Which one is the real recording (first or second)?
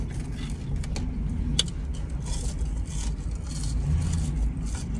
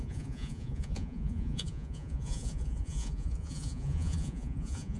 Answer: first